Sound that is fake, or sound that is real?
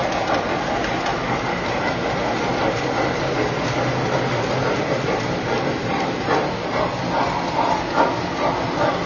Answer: real